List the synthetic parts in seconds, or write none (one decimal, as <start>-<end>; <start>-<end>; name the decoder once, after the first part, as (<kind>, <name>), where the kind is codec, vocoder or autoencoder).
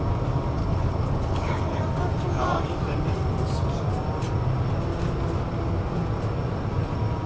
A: 0.6-1.8 (codec, HILCodec)